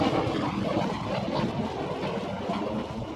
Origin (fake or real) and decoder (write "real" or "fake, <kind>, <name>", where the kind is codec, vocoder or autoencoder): real